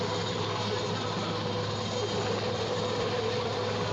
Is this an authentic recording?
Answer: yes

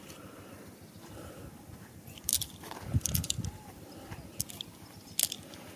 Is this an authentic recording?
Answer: yes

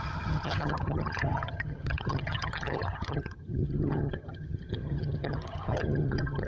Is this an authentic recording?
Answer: no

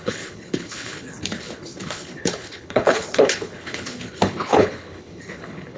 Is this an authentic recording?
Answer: no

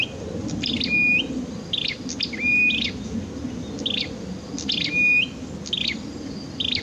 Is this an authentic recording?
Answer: yes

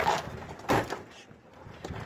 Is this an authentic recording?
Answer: no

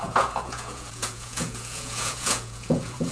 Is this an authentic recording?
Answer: no